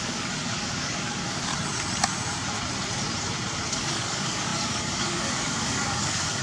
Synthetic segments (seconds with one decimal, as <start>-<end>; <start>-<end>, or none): 0.0-1.5; 3.7-6.4